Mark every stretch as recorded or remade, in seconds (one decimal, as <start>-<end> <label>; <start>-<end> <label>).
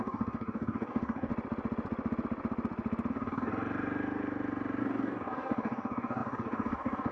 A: 0.0-1.3 remade; 1.3-3.1 recorded; 3.1-3.5 remade; 3.5-4.8 recorded; 4.8-7.1 remade